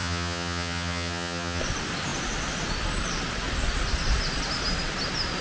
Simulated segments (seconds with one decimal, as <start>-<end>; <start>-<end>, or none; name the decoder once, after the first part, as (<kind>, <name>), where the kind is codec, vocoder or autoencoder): 0.0-1.6 (vocoder, HiFi-GAN)